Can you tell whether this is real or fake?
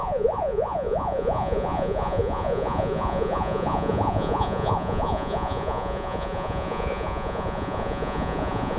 fake